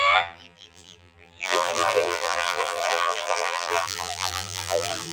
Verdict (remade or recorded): remade